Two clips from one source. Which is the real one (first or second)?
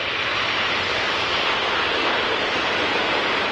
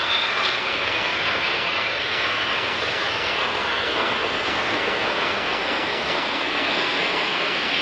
first